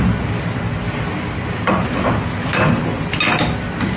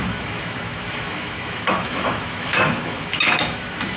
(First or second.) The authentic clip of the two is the first